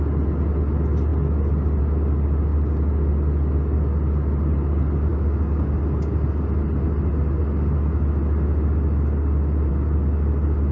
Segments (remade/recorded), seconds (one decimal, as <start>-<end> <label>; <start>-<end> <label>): 0.0-10.7 recorded